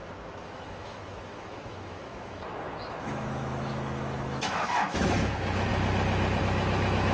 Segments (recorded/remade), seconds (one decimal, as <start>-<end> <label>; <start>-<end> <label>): 0.0-5.7 remade; 5.7-6.4 recorded; 6.4-7.1 remade